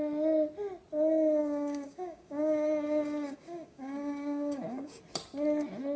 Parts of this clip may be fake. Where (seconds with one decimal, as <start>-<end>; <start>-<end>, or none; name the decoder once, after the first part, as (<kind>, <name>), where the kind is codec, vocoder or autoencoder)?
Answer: 1.4-5.0 (codec, DAC)